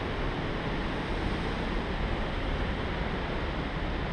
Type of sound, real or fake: real